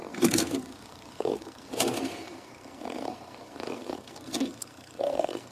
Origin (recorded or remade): remade